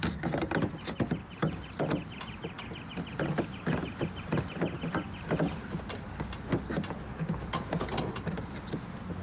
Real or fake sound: real